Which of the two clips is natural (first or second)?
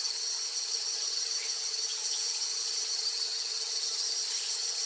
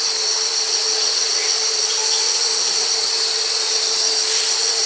second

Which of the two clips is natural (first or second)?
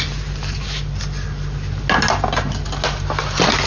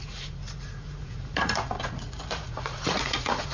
first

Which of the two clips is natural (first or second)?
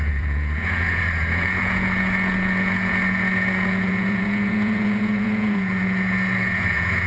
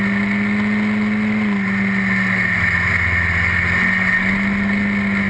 second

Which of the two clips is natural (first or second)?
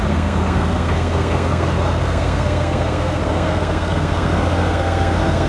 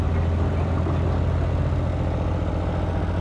second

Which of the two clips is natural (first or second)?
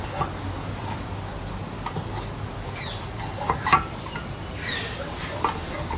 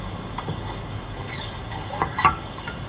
first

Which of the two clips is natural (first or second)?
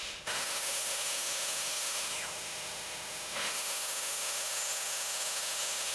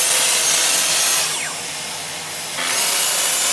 second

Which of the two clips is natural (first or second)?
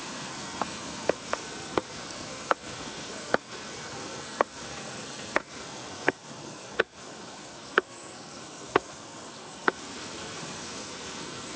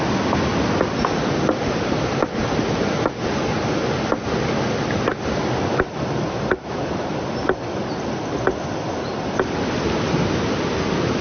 second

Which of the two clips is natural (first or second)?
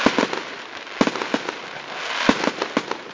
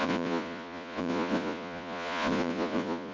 first